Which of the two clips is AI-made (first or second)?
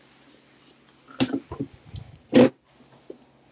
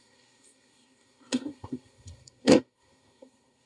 second